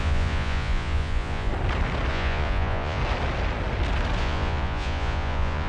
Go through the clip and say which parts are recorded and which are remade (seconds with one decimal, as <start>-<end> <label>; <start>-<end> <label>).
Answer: 0.0-1.5 remade; 1.5-2.1 recorded; 2.1-3.0 remade; 3.0-4.2 recorded; 4.2-5.7 remade